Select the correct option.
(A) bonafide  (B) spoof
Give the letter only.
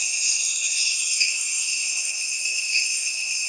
B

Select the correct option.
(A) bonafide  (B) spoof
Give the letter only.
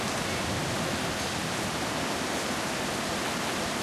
A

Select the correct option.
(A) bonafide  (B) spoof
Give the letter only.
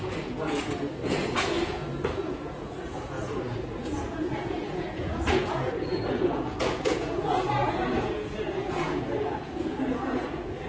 B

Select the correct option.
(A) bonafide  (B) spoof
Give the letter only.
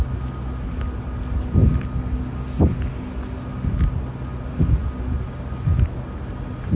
A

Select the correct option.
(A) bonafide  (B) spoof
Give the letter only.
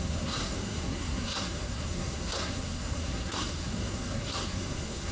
B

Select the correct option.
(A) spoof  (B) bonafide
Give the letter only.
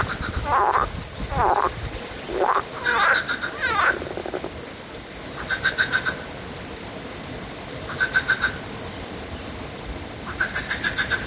B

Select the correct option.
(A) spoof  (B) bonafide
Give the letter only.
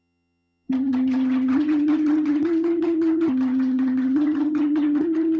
A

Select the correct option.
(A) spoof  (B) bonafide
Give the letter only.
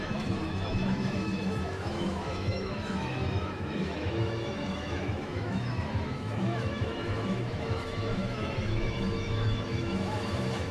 A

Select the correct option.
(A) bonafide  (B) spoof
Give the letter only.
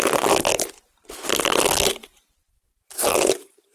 A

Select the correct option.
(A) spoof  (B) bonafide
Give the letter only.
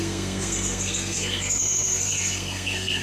A